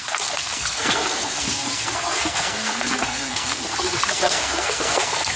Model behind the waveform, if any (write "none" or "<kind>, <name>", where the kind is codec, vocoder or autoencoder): codec, SNAC